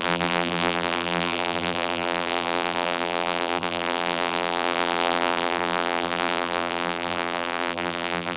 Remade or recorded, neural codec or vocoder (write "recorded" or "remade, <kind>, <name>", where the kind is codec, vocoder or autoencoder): remade, vocoder, BigVGAN v2